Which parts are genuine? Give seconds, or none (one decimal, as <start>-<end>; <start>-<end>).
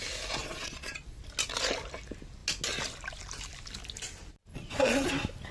0.0-0.4; 1.2-4.5; 5.1-5.5